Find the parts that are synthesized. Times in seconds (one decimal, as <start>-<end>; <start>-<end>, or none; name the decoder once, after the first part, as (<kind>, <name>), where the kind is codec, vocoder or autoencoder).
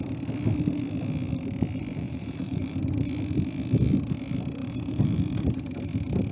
1.9-2.8 (vocoder, BigVGAN v2); 4.6-5.2